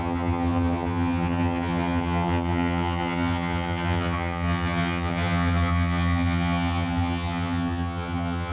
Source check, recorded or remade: remade